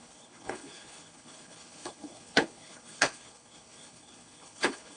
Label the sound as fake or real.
fake